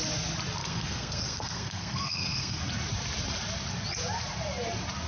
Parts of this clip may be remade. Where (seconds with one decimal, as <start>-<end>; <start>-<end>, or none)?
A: 0.6-2.6